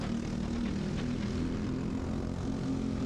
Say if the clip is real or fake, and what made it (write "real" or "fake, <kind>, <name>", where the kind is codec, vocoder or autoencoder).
real